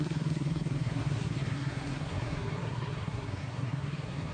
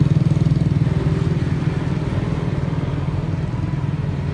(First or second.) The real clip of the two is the second